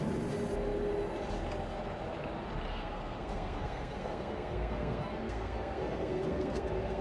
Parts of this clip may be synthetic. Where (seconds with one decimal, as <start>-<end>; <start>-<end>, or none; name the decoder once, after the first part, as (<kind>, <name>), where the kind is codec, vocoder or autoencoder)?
2.7-7.0 (codec, SNAC)